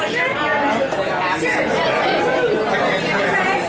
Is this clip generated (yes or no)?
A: no